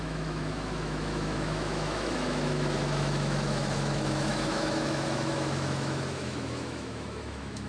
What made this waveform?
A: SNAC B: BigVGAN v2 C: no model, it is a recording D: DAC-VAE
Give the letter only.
D